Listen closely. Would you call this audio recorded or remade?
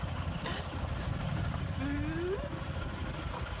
recorded